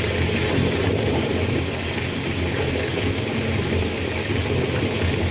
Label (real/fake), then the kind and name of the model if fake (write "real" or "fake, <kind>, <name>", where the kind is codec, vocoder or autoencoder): real